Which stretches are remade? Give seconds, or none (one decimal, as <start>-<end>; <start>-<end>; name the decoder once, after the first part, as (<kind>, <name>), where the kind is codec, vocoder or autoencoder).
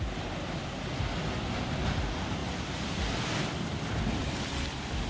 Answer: 2.4-4.2 (vocoder, BigVGAN v2)